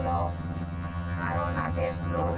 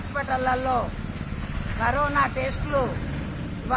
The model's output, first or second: first